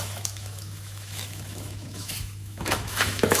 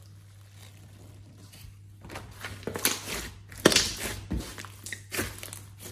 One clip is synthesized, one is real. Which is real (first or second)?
second